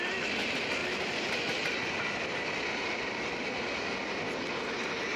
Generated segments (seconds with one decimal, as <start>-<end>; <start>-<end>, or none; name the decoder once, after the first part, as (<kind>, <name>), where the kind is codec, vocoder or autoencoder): none